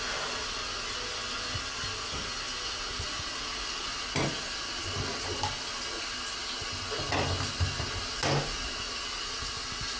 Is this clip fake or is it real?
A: real